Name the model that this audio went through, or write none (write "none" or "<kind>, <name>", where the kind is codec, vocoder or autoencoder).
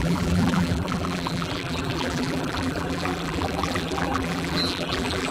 vocoder, BigVGAN v2